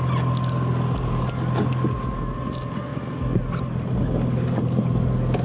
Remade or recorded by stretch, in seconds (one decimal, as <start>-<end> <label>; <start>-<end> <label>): 0.0-5.4 recorded